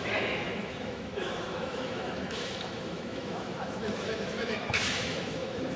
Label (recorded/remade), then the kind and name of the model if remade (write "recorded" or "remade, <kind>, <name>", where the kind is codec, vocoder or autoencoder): remade, autoencoder, DAC-VAE